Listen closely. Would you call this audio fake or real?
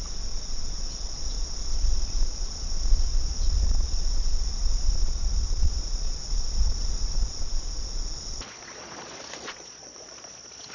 fake